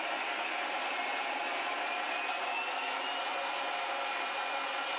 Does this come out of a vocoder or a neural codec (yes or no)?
no